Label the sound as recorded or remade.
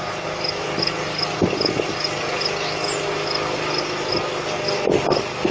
recorded